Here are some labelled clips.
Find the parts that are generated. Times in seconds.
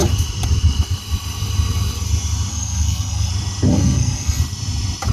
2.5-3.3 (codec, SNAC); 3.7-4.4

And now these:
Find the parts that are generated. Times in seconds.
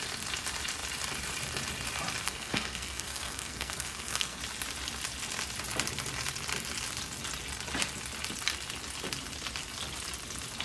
2.2-4.4 (codec, SNAC)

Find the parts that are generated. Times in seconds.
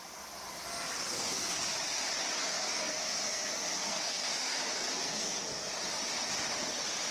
0.9-1.7 (codec, SNAC); 2.4-5.7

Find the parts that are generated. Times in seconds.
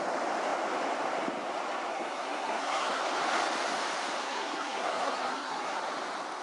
1.9-3.0 (codec, SNAC); 4.2-5.8